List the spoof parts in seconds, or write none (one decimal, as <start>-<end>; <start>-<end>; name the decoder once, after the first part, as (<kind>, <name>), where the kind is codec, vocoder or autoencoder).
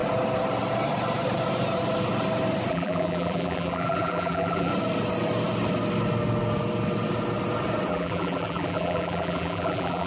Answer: 2.7-4.7 (vocoder, BigVGAN v2); 7.9-10.1